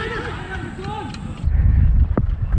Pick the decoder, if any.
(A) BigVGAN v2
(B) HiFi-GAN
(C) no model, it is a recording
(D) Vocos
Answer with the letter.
C